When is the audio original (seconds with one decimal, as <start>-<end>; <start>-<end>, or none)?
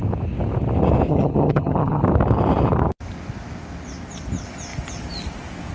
0.0-1.1; 2.0-5.7